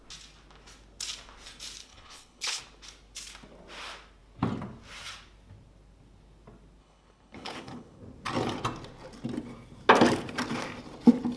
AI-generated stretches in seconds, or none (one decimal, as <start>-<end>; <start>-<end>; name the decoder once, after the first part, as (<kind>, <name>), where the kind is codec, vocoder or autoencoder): 1.8-2.6 (codec, HILCodec); 6.8-8.0